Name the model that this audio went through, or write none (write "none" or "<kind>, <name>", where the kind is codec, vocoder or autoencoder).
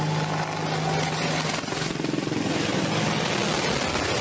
none